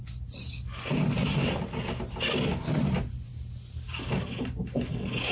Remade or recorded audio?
recorded